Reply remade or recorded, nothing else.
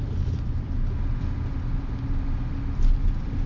recorded